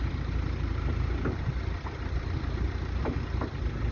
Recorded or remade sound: recorded